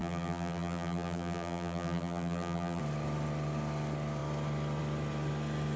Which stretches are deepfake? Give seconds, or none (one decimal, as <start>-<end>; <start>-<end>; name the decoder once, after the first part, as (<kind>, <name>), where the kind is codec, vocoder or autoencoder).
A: 0.0-2.8 (vocoder, BigVGAN v2)